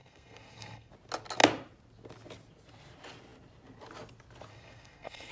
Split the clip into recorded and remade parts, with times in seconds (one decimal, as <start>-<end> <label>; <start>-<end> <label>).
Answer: 0.0-0.9 remade; 0.9-4.5 recorded; 4.5-5.3 remade